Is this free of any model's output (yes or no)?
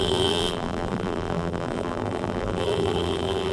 no